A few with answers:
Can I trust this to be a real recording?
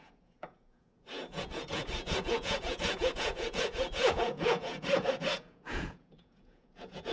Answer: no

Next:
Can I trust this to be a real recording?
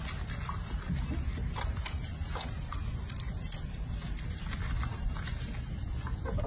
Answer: yes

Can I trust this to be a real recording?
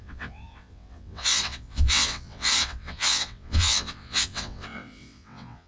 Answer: no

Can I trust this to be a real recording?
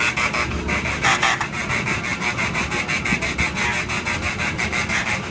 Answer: yes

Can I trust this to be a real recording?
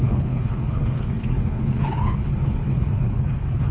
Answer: no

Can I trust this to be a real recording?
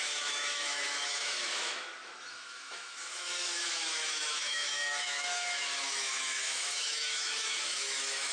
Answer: no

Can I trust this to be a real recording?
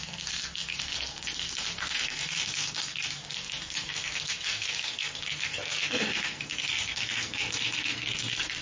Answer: no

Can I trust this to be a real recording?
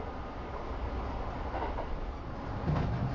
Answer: yes